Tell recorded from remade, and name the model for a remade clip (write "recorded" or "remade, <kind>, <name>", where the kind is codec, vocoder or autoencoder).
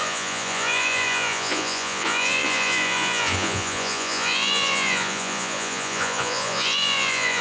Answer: remade, vocoder, Vocos